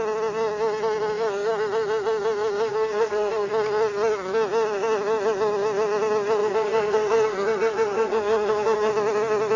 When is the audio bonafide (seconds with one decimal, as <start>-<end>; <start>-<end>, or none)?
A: 0.0-2.7; 3.5-6.4; 8.9-9.6